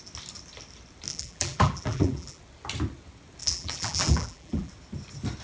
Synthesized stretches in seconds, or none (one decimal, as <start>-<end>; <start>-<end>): 1.1-2.4; 3.4-4.7